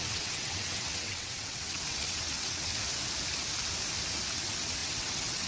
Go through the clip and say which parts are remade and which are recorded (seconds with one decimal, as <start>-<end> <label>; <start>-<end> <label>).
0.0-2.7 remade; 2.7-4.3 recorded; 4.3-5.5 remade